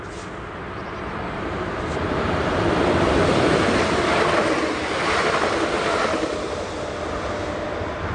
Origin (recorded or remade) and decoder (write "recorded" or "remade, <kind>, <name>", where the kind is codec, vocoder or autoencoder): recorded